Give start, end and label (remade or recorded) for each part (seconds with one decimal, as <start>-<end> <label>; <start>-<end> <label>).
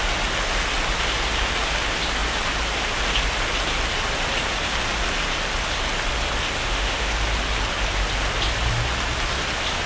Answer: 0.0-6.6 recorded; 6.6-7.1 remade; 7.1-9.9 recorded